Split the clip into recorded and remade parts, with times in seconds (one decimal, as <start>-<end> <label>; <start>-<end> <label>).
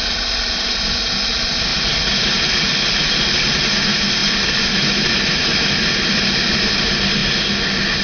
0.0-8.0 recorded